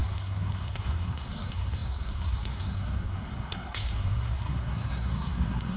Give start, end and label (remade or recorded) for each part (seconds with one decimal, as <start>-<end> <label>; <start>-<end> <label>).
0.0-5.8 remade